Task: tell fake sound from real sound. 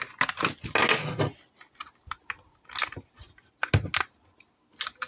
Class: real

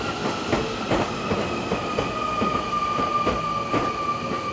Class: real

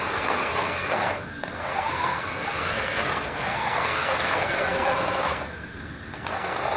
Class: fake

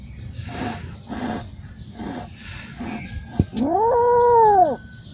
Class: real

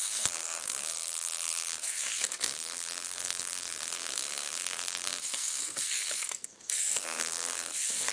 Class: fake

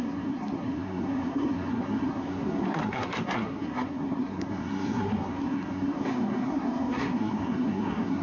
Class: fake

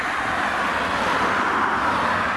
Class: real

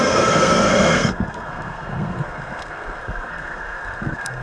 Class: fake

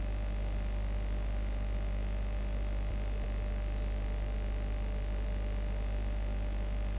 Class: real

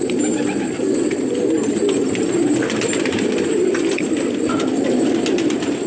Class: real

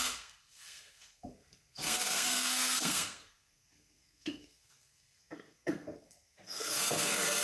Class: fake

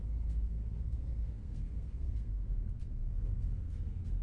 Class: fake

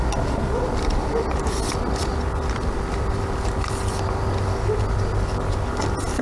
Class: real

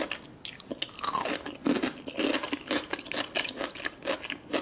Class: real